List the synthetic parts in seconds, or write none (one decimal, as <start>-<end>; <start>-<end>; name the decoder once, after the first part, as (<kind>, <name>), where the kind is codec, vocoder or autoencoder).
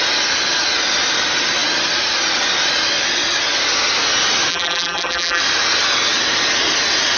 4.5-5.4 (vocoder, BigVGAN v2)